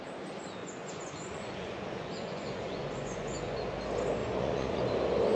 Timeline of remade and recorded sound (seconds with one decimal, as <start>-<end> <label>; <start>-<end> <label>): 0.0-0.6 recorded; 0.6-3.8 remade; 3.8-4.2 recorded; 4.2-4.8 remade; 4.8-5.4 recorded